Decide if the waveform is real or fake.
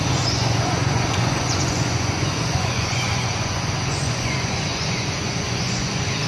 fake